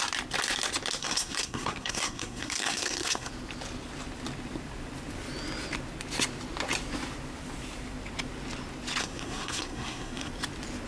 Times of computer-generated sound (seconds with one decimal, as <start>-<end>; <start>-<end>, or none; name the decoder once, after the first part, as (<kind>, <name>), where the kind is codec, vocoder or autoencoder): 1.0-3.3 (codec, SNAC); 9.0-10.3